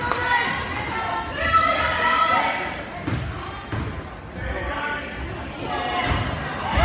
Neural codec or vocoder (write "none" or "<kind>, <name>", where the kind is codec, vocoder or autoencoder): none